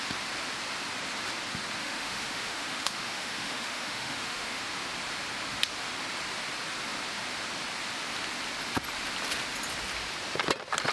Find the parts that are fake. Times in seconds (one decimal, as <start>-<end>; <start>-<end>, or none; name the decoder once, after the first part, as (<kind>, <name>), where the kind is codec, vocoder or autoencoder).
1.8-4.6 (autoencoder, DAC-VAE)